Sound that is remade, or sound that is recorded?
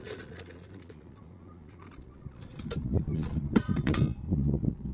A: remade